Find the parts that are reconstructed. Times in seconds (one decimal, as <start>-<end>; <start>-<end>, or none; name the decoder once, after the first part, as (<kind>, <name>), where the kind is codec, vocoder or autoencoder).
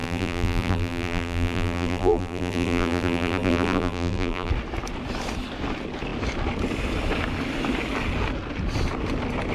0.0-4.5 (vocoder, BigVGAN v2)